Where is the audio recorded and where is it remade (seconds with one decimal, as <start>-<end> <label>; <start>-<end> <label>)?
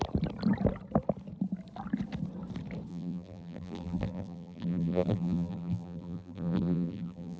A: 0.0-2.9 recorded; 2.9-7.4 remade